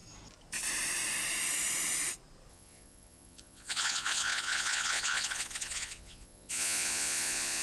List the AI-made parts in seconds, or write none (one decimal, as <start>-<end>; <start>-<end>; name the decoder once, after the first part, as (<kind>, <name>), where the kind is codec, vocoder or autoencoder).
2.5-7.6 (vocoder, Vocos)